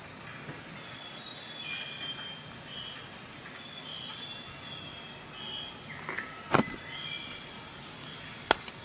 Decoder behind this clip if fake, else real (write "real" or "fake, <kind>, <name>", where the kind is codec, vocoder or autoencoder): real